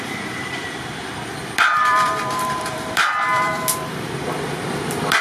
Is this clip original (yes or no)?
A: no